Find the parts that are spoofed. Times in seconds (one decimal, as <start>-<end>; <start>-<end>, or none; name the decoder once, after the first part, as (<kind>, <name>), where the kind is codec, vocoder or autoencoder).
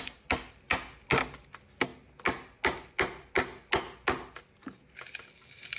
none